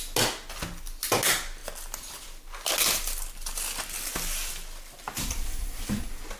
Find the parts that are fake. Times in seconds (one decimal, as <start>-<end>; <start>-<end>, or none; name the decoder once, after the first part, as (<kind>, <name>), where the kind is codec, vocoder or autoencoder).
none